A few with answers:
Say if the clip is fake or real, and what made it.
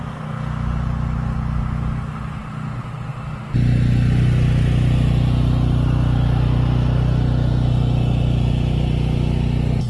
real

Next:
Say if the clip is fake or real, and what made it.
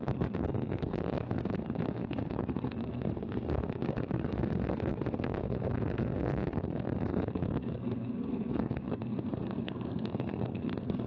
fake, codec, SNAC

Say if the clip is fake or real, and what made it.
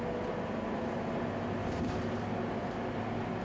real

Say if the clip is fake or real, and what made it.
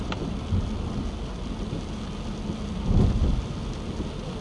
real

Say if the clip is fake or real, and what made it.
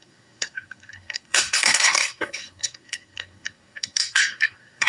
fake, codec, SNAC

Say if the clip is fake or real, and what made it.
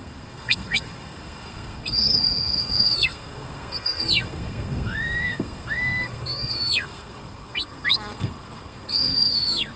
fake, codec, SNAC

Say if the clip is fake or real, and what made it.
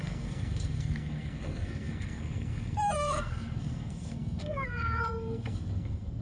fake, codec, SNAC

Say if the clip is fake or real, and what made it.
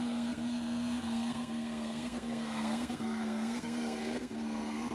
fake, codec, SNAC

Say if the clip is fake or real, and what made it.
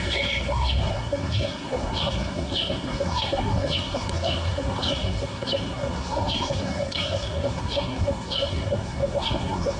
fake, codec, SNAC